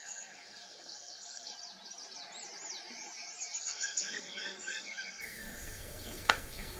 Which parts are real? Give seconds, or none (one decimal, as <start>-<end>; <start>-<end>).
1.5-3.6